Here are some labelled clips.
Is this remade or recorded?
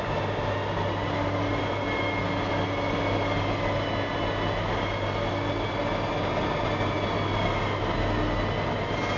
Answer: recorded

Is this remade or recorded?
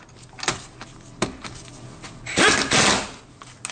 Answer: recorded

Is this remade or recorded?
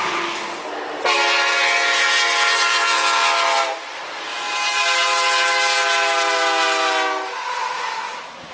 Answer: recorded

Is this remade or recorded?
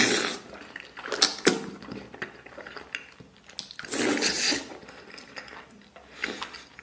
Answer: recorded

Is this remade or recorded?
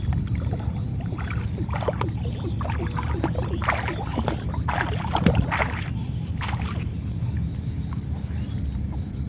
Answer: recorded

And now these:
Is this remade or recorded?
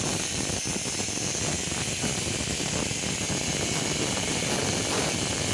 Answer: recorded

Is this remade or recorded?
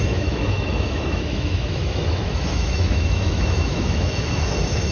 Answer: remade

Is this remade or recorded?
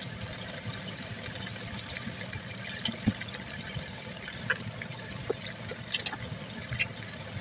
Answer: recorded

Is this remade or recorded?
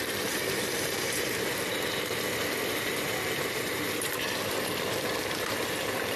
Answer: recorded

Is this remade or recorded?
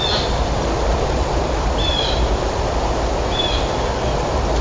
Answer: remade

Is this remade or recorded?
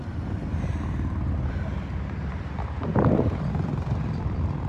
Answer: remade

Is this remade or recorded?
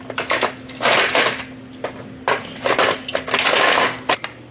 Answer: recorded